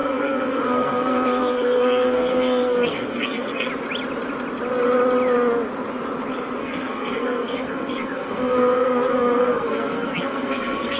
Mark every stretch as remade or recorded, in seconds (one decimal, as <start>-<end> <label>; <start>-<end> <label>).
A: 0.0-3.7 remade; 3.7-6.6 recorded; 6.6-11.0 remade